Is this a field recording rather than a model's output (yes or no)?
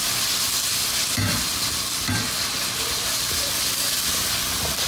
yes